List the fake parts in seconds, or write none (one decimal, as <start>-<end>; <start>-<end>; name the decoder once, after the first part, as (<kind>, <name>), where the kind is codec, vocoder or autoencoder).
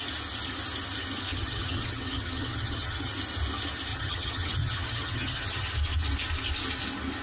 1.3-3.1 (vocoder, HiFi-GAN); 3.9-5.7